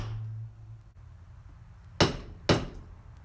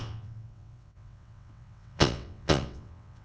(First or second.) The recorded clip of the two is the first